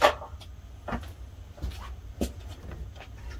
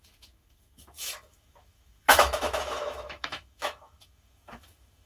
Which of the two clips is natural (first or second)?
first